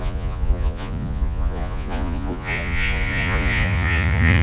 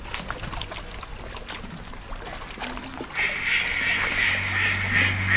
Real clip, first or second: second